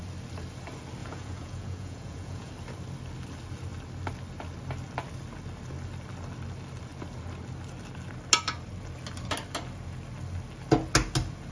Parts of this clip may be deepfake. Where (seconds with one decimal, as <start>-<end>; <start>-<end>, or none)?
1.0-2.5